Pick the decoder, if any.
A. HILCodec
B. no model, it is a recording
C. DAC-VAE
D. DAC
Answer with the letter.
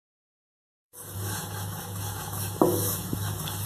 C